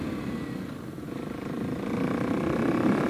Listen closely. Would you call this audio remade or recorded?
recorded